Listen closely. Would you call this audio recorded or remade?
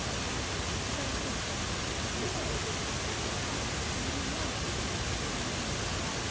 recorded